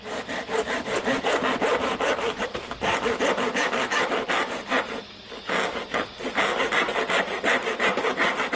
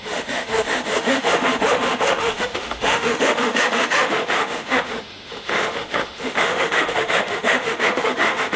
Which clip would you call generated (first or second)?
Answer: second